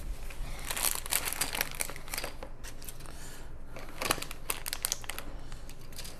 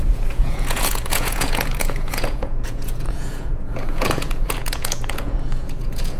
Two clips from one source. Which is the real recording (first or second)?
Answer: first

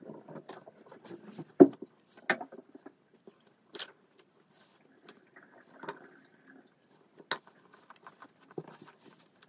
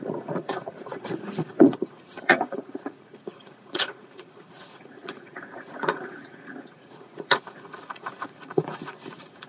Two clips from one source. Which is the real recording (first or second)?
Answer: first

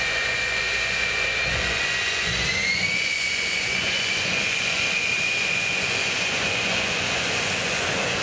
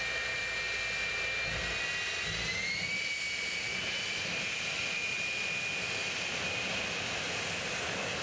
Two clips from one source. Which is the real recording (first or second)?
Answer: second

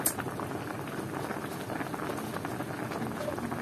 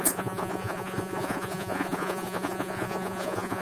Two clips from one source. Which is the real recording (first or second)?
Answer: first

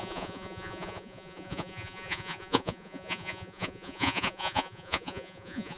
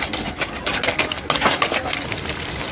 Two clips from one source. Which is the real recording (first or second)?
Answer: second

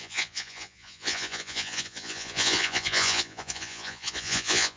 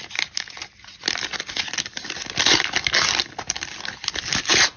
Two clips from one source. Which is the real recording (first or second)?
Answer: second